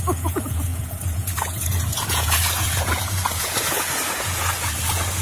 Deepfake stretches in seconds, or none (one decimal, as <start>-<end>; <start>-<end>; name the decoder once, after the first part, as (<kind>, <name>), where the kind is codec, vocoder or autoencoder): 0.0-5.2 (vocoder, Vocos)